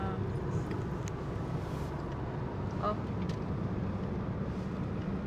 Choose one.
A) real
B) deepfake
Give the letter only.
A